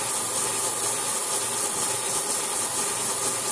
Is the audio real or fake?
real